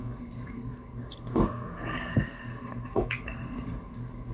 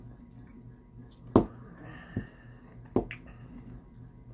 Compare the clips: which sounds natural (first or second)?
second